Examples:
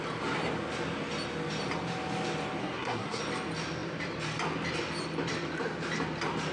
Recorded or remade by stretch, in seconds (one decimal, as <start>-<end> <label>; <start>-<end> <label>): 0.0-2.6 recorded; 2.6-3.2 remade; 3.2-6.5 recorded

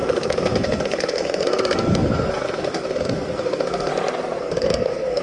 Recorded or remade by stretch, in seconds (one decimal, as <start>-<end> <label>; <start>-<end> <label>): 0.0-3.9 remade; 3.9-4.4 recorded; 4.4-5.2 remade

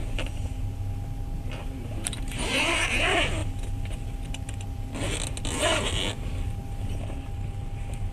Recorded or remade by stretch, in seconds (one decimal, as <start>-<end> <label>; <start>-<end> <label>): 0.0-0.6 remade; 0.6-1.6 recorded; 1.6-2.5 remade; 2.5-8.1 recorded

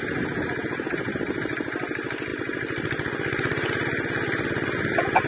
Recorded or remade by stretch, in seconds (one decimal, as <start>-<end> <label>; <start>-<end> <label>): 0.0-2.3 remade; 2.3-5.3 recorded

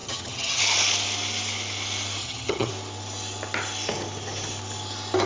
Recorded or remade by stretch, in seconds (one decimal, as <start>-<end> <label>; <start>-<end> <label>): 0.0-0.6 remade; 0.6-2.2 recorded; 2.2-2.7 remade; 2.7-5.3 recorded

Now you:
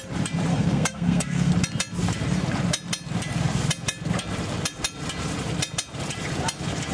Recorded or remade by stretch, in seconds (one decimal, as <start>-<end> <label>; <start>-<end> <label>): 0.0-0.5 recorded; 0.5-1.5 remade; 1.5-6.9 recorded

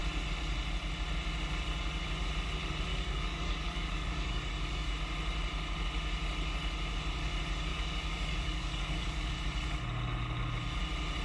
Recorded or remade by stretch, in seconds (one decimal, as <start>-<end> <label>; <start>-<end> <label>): 0.0-2.9 recorded; 2.9-4.9 remade; 4.9-7.7 recorded; 7.7-9.3 remade; 9.3-11.2 recorded